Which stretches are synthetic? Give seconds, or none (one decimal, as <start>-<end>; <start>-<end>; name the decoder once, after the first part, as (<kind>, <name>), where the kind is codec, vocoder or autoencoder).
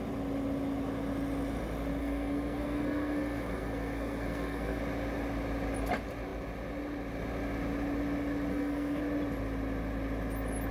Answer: 2.0-4.8 (codec, SNAC); 8.5-9.0